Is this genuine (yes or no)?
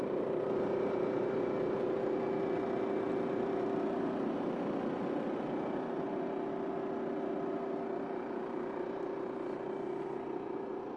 yes